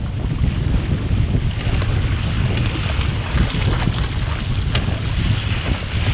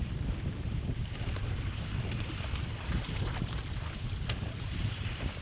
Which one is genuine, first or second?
first